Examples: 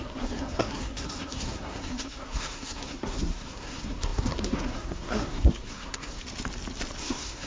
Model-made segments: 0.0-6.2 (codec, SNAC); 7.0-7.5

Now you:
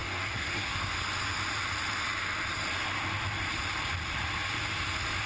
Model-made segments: 0.0-0.9 (codec, SNAC)

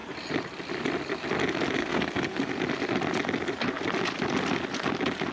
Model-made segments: 1.8-2.5 (codec, SNAC)